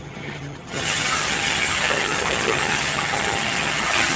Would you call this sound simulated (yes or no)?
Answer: yes